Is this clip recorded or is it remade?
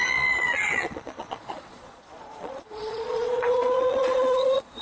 remade